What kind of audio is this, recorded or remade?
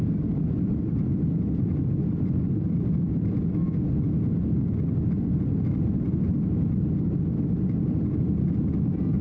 recorded